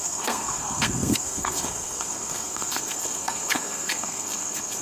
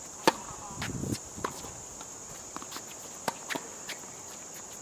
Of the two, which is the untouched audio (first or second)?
second